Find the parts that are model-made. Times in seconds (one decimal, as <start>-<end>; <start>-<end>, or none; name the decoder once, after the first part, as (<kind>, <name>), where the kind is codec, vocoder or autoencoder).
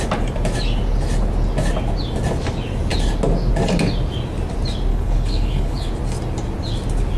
4.9-5.9 (codec, HILCodec)